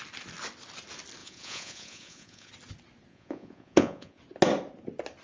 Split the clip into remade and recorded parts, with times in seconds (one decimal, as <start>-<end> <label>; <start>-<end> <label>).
0.0-1.2 recorded; 1.2-2.5 remade; 2.5-3.1 recorded; 3.1-4.2 remade; 4.2-5.2 recorded